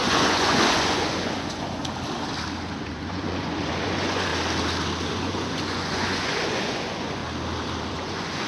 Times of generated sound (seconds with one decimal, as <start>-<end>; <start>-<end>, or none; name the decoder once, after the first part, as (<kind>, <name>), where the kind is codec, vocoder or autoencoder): 0.0-1.8 (vocoder, Vocos); 2.8-4.3; 5.1-7.2; 7.9-8.5